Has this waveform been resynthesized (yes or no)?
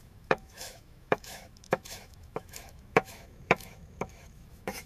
yes